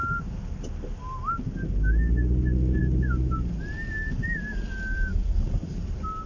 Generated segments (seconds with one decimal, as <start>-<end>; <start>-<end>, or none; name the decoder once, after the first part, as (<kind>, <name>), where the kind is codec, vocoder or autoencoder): none